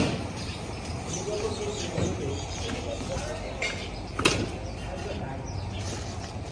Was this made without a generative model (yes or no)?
yes